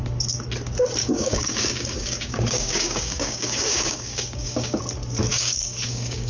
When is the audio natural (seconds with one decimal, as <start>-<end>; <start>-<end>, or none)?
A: 0.0-1.0; 4.8-5.3